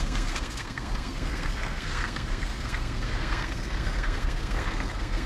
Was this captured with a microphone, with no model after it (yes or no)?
no